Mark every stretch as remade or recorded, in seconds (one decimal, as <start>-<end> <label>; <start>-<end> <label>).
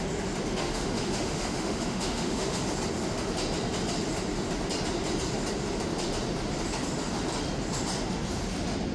0.0-0.6 recorded; 0.6-2.6 remade; 2.6-8.9 recorded